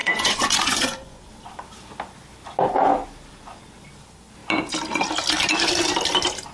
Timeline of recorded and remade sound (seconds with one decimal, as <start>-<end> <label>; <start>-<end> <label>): 0.0-1.3 remade; 1.3-6.5 recorded